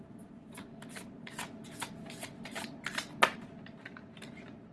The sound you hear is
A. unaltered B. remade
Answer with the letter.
A